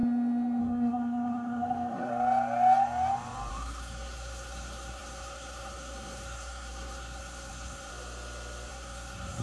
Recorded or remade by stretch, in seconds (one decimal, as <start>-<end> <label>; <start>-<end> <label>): 0.0-0.6 recorded; 0.6-2.1 remade; 2.1-3.5 recorded; 3.5-7.9 remade; 7.9-8.7 recorded; 8.7-9.4 remade